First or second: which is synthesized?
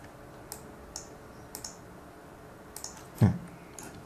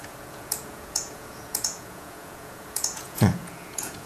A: second